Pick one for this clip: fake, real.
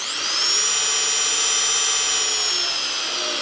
real